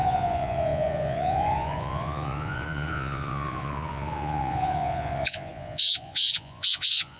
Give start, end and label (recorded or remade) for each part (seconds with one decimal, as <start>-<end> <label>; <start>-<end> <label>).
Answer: 0.0-7.2 remade